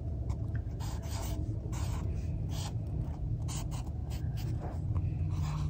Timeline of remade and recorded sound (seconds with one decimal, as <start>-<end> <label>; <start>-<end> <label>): 0.0-5.7 recorded